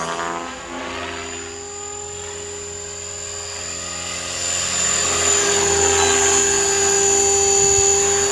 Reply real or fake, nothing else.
real